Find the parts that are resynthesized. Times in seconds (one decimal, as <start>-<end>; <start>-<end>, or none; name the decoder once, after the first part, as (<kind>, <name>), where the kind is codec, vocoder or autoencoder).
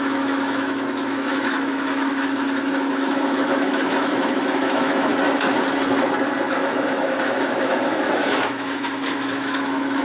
0.0-5.1 (autoencoder, DAC-VAE); 6.5-10.0